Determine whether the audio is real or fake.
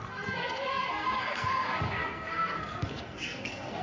fake